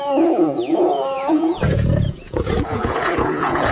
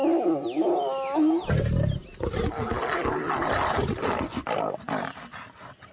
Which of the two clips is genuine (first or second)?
second